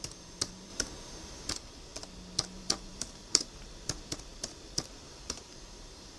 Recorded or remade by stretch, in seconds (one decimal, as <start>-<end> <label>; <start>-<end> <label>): 0.0-1.9 remade; 1.9-2.4 recorded; 2.4-6.2 remade